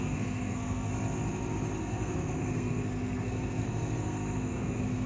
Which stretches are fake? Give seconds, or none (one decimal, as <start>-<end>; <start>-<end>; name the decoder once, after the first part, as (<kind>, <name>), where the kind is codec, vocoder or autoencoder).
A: 0.0-0.9 (codec, SNAC); 1.8-5.1